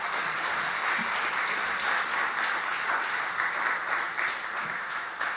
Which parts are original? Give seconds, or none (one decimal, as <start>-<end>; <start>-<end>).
0.0-4.6

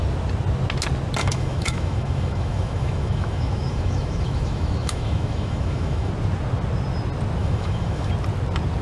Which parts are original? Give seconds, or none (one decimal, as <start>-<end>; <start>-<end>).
0.0-1.2; 6.1-7.4; 8.1-8.8

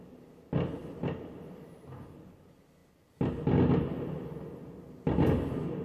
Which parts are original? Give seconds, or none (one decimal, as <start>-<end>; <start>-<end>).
0.0-5.8

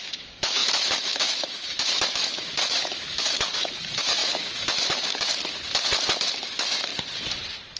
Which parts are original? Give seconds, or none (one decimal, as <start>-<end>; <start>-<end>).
5.3-6.5; 6.9-7.8